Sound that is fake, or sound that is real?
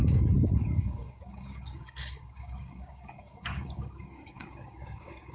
fake